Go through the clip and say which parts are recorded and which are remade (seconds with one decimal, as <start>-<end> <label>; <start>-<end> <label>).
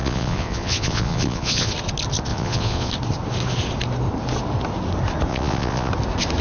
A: 0.0-1.7 remade; 1.7-2.3 recorded; 2.3-2.9 remade; 2.9-5.3 recorded; 5.3-5.9 remade; 5.9-6.4 recorded